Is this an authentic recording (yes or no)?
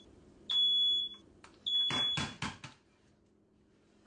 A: yes